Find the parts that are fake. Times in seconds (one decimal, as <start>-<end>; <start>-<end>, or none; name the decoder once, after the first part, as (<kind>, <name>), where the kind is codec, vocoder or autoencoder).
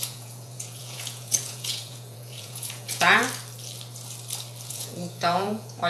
0.0-3.2 (vocoder, Vocos); 4.7-5.9